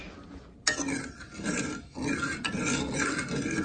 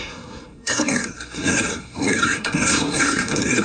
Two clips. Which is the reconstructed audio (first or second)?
second